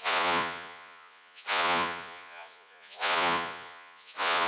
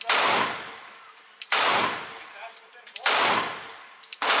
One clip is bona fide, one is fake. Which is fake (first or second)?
first